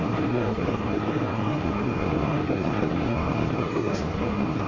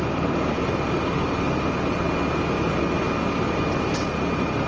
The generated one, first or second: first